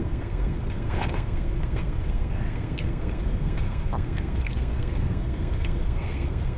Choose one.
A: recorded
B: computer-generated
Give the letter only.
B